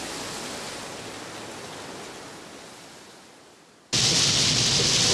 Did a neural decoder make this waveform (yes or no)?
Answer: no